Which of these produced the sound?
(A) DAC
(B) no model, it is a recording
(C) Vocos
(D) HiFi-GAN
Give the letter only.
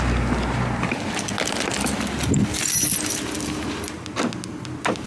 B